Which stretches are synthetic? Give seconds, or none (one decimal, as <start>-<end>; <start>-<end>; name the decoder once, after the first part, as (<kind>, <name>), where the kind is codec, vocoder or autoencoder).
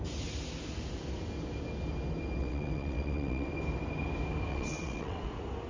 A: 2.4-3.5 (vocoder, WaveNeXt); 4.5-5.3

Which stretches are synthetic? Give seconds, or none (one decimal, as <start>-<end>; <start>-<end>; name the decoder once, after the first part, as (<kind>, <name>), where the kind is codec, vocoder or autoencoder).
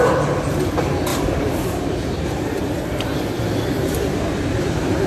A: 1.1-4.2 (vocoder, BigVGAN v2)